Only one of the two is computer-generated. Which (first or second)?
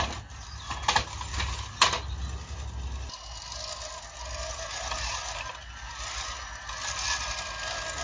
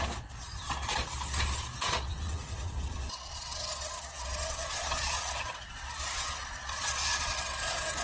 second